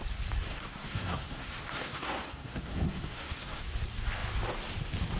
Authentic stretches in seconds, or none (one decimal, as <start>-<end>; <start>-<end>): 0.0-0.5; 3.6-5.2